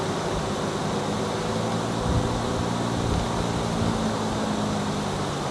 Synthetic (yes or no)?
no